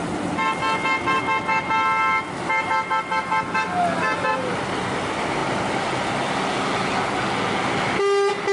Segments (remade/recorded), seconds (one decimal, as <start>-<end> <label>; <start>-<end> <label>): 0.0-8.5 recorded